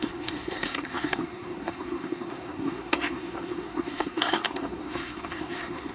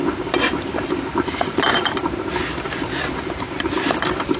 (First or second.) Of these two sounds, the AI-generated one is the first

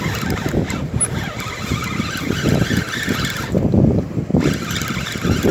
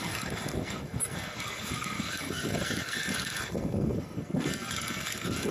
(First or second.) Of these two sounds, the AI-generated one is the second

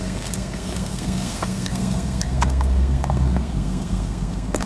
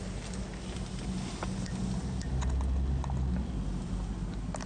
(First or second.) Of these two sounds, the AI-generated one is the first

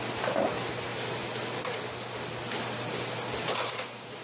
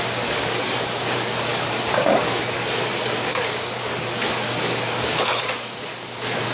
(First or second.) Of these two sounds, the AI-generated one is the second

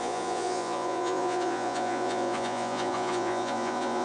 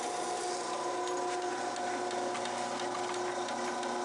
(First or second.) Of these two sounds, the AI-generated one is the first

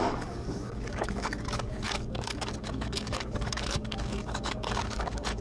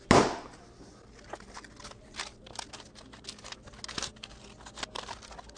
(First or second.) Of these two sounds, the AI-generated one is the first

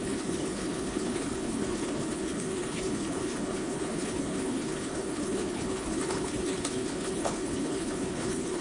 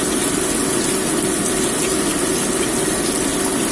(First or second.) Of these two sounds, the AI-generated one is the first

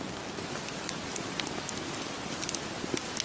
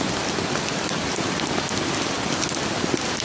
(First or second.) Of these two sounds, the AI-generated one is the second